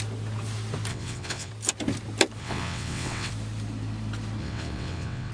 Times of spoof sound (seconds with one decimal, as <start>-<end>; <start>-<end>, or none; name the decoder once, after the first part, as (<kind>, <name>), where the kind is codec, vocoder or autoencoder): 0.9-1.5 (vocoder, WaveNeXt); 2.4-3.3; 4.4-5.3